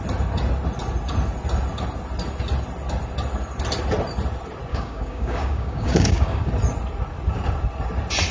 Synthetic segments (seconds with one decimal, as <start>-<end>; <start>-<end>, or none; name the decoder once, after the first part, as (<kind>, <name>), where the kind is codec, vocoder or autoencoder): 4.7-6.5 (codec, DAC)